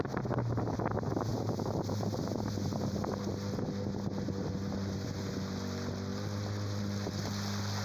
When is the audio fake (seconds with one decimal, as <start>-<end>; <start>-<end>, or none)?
1.3-3.0